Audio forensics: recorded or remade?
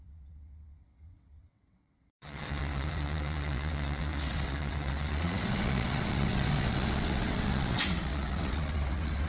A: remade